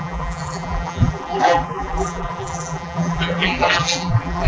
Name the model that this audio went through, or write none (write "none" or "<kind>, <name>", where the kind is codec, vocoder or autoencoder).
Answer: vocoder, BigVGAN v2